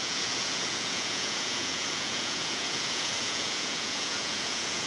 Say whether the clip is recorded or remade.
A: remade